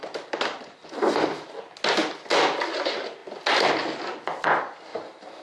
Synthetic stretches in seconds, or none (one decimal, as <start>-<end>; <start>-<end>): 0.0-1.6; 4.9-5.4